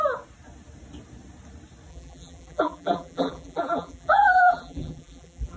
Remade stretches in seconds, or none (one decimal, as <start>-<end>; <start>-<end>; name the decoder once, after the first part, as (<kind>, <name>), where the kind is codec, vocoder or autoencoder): 1.9-5.6 (vocoder, BigVGAN v2)